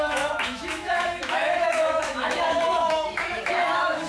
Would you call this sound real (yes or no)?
no